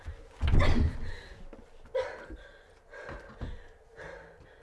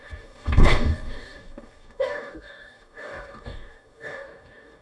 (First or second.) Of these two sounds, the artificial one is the second